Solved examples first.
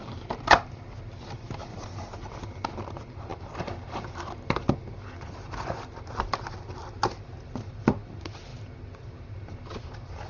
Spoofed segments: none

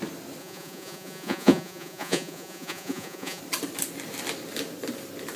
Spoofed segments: 0.4-3.4

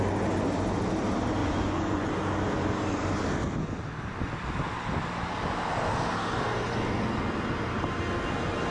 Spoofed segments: 1.4-2.1

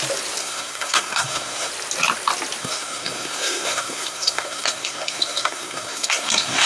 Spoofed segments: 0.4-1.7; 2.6-6.7

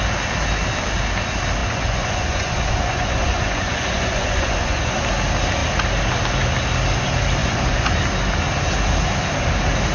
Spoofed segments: 1.6-4.9; 7.4-7.9

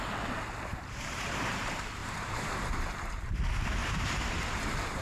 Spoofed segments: 0.7-1.6; 2.0-3.4; 3.8-5.0

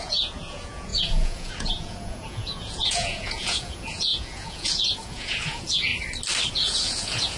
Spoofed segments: 0.0-5.9; 6.5-7.4

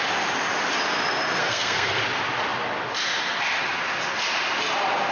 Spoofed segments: 1.4-2.0